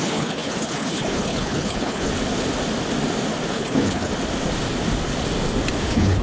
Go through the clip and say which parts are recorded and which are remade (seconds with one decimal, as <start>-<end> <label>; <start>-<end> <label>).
0.0-2.1 remade; 2.1-3.5 recorded; 3.5-4.1 remade; 4.1-5.8 recorded; 5.8-6.2 remade